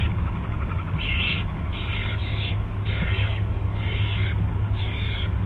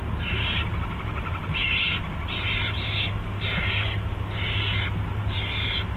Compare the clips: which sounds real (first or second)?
second